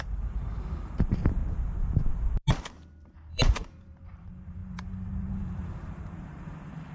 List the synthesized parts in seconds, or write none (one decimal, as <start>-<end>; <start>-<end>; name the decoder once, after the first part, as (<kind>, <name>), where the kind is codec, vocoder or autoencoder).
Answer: 0.0-1.4 (vocoder, BigVGAN v2); 3.3-6.9